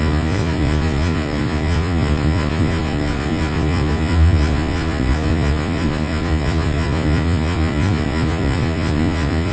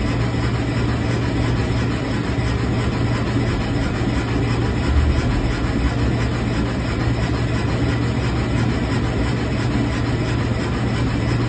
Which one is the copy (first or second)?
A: first